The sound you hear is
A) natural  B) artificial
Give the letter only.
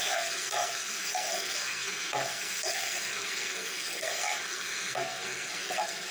B